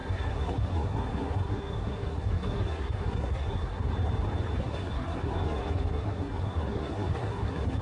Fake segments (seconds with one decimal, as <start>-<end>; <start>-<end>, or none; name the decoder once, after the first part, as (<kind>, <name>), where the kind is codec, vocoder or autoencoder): 0.0-3.9 (codec, SNAC); 4.6-7.8